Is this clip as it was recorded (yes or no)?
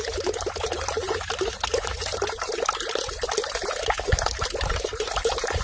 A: yes